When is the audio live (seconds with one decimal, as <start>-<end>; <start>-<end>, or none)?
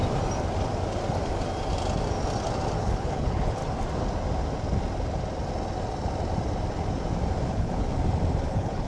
0.0-2.8; 3.6-7.5; 7.9-8.5